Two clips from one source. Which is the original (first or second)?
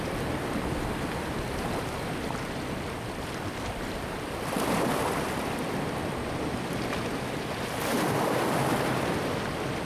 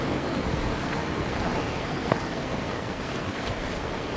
first